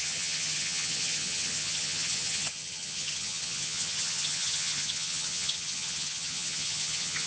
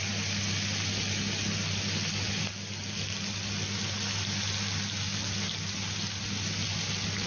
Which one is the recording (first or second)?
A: second